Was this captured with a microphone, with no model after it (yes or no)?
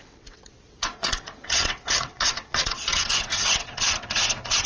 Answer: no